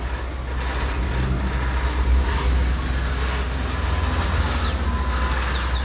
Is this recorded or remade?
recorded